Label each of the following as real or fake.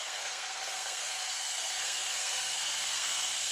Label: fake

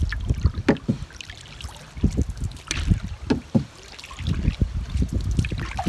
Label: real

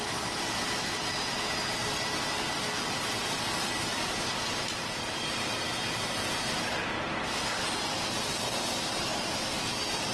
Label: real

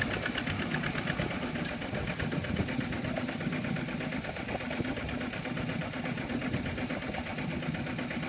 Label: real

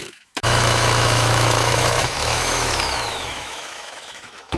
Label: fake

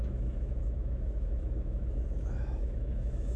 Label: fake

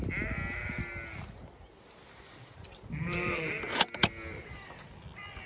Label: real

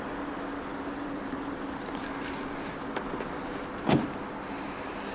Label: real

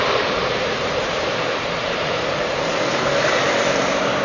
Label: fake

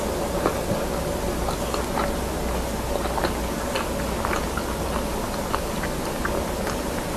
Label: real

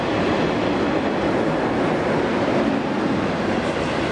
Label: real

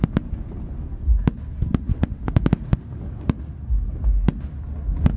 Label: real